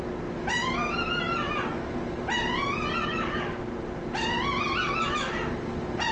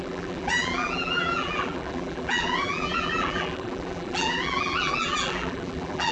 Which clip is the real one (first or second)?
first